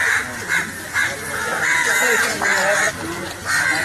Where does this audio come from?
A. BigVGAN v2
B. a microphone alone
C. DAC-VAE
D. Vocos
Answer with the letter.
B